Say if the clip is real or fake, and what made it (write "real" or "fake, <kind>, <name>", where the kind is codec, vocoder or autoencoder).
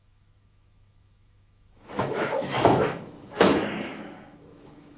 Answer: fake, autoencoder, DAC-VAE